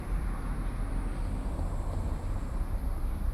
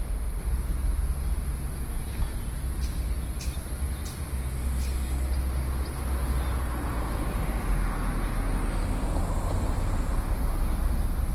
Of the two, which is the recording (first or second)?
second